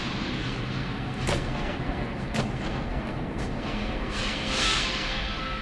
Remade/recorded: remade